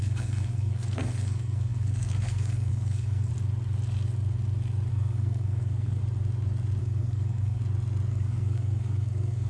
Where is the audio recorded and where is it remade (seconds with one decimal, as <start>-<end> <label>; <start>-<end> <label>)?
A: 0.0-3.3 remade; 3.3-4.9 recorded; 4.9-6.0 remade; 6.0-6.8 recorded; 6.8-7.6 remade; 7.6-8.1 recorded; 8.1-9.5 remade